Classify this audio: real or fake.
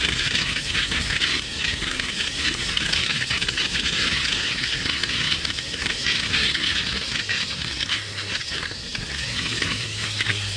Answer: fake